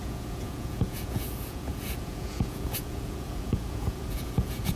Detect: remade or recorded remade